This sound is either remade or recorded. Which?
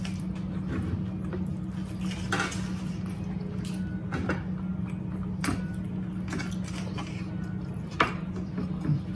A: recorded